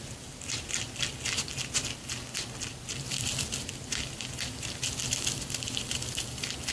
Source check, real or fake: real